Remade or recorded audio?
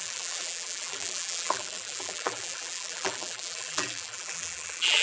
remade